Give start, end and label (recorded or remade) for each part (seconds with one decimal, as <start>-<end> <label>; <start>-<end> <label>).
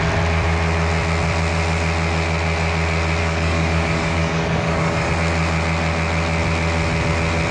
0.0-3.2 recorded; 3.2-5.1 remade; 5.1-7.5 recorded